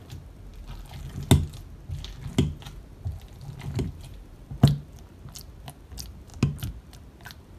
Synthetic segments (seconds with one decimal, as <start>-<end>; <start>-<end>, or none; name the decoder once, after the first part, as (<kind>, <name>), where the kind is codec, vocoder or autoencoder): 0.0-0.5 (vocoder, BigVGAN v2); 3.8-6.3; 7.0-7.6